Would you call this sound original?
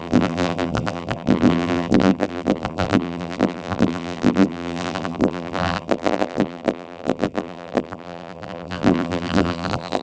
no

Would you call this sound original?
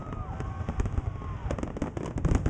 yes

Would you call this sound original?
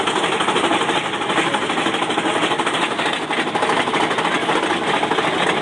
yes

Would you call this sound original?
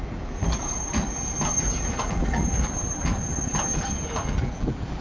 no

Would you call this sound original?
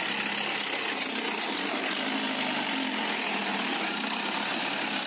yes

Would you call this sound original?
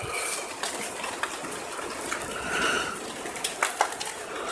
yes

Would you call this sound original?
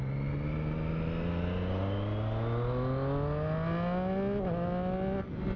yes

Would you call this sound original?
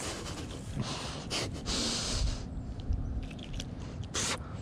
yes